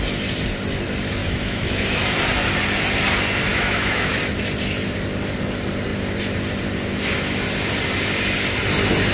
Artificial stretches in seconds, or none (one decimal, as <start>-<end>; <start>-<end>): 1.2-2.0; 3.5-4.1